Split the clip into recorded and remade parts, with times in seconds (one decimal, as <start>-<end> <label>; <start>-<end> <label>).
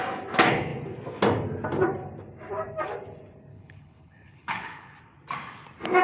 0.0-3.5 recorded; 3.5-5.0 remade; 5.0-6.0 recorded